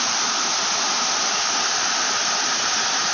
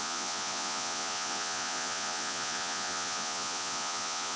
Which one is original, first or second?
first